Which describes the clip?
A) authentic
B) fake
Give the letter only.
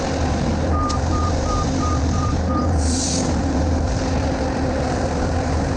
B